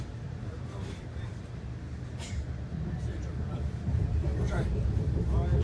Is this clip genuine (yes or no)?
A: no